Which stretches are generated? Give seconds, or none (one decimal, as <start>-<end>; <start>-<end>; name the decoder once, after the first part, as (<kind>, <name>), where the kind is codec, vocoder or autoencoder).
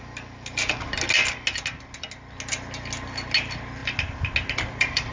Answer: none